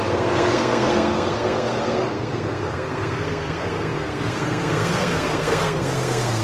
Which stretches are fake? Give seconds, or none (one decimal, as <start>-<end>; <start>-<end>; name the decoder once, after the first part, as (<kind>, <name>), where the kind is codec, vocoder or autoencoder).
0.0-6.4 (codec, SNAC)